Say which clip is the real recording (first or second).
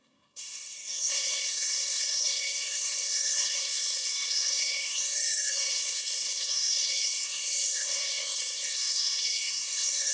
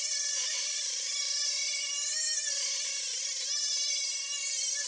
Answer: second